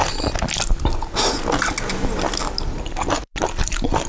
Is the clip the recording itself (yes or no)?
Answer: yes